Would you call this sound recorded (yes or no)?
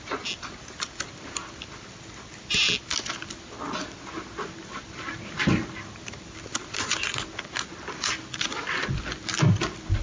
yes